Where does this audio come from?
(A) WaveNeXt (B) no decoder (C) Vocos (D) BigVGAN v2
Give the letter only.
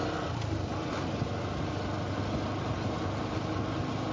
B